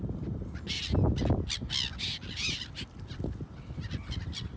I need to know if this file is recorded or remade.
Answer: recorded